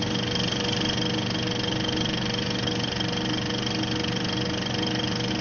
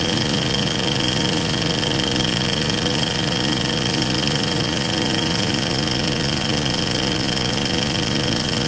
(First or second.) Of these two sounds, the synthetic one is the second